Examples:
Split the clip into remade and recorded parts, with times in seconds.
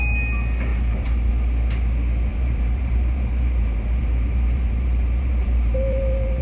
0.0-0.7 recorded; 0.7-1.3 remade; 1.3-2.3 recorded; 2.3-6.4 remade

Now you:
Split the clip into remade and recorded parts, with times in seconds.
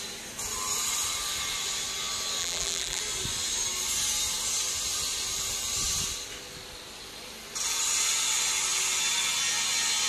0.0-2.4 recorded; 2.4-3.0 remade; 3.0-10.1 recorded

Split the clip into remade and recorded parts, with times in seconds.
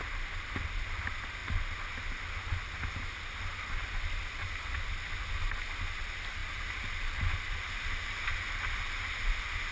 0.0-6.4 recorded; 6.4-7.7 remade; 7.7-9.7 recorded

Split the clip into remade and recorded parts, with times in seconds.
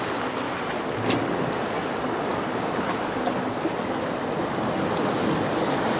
0.0-2.3 recorded; 2.3-3.0 remade; 3.0-6.0 recorded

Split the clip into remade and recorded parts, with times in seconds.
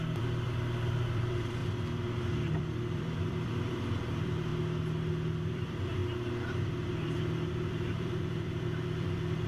0.0-1.6 remade; 1.6-2.2 recorded; 2.2-4.5 remade; 4.5-5.5 recorded; 5.5-6.0 remade; 6.0-6.5 recorded; 6.5-9.5 remade